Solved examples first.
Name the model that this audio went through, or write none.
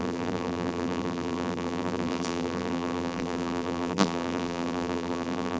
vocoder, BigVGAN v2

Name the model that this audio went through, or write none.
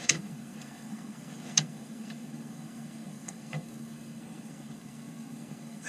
codec, SNAC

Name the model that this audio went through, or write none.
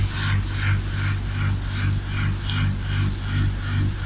none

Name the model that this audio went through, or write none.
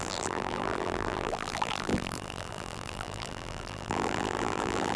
vocoder, BigVGAN v2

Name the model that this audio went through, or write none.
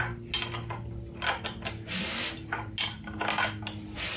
none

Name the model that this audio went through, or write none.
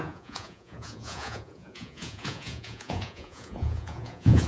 vocoder, Vocos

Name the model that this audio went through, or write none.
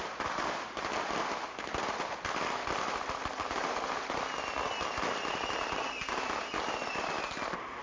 none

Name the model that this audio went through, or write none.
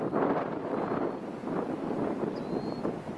none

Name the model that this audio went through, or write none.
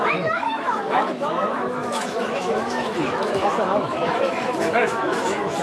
autoencoder, DAC-VAE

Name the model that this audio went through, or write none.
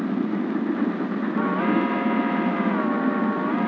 none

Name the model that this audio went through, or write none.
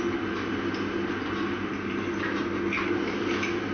none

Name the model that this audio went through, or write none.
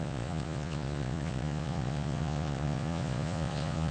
vocoder, Vocos